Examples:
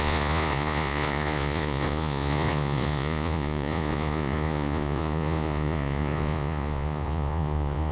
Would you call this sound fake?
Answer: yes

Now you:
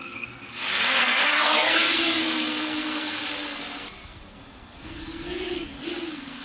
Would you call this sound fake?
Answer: yes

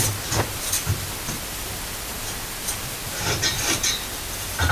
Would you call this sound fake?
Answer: no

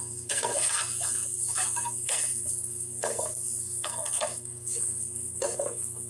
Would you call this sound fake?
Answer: yes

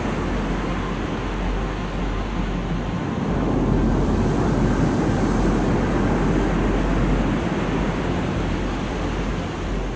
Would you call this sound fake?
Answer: no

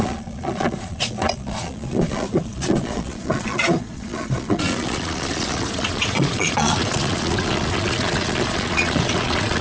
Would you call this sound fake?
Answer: yes